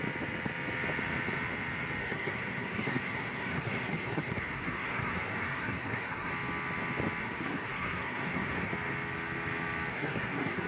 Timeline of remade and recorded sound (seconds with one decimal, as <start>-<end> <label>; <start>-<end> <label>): 0.0-2.0 recorded; 2.0-6.3 remade; 6.3-7.2 recorded; 7.2-8.7 remade; 8.7-9.9 recorded; 9.9-10.7 remade